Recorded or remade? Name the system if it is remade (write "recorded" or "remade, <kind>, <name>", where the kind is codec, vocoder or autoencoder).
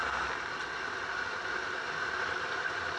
recorded